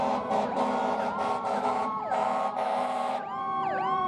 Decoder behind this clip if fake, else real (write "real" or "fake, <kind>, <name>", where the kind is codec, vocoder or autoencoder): fake, vocoder, BigVGAN v2